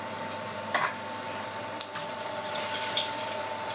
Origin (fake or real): fake